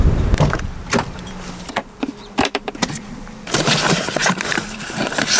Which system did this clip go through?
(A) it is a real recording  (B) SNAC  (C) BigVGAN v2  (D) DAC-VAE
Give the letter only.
C